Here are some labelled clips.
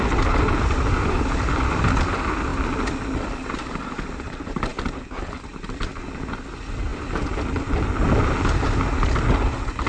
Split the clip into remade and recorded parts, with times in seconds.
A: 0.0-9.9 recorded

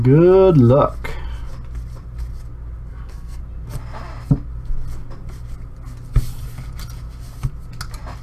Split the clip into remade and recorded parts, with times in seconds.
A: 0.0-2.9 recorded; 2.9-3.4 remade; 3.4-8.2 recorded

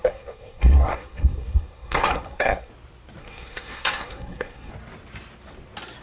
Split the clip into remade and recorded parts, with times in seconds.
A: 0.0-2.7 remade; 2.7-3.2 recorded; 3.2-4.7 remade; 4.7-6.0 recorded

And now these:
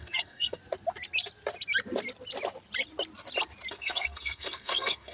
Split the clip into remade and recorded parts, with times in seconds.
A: 0.0-0.6 remade; 0.6-3.7 recorded; 3.7-5.1 remade

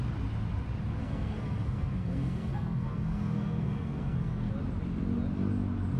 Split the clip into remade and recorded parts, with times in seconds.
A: 0.0-1.0 recorded; 1.0-4.5 remade; 4.5-6.0 recorded